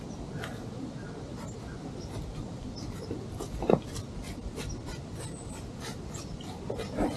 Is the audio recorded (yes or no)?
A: yes